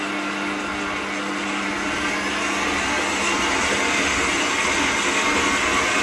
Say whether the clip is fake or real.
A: real